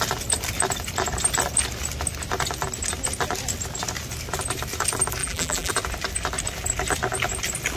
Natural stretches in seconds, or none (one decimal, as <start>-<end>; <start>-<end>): 0.0-5.2; 5.7-7.8